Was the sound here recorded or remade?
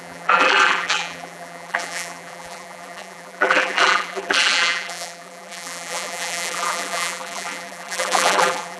remade